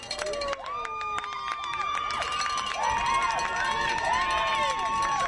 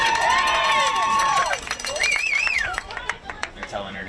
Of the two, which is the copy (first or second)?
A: second